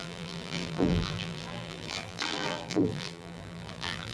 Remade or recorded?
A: remade